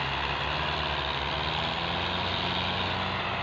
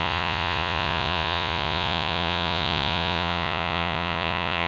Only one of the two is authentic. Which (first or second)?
first